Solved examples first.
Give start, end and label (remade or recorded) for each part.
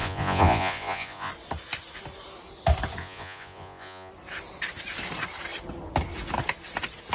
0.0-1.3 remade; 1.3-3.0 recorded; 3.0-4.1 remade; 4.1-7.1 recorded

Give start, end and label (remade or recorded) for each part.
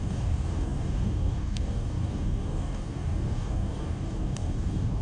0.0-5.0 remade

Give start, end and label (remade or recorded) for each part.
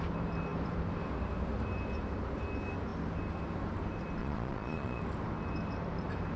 0.0-4.2 recorded; 4.2-5.0 remade; 5.0-6.4 recorded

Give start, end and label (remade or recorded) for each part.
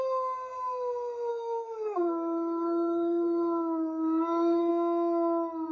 0.0-1.3 recorded; 1.3-4.7 remade; 4.7-5.7 recorded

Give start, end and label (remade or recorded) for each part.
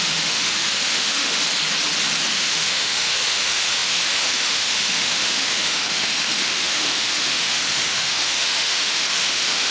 0.0-1.4 remade; 1.4-2.3 recorded; 2.3-9.7 remade